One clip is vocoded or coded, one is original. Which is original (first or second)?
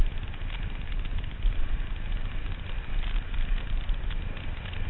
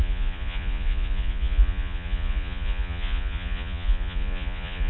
first